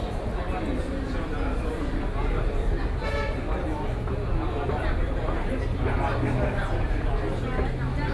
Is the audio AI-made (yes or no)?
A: no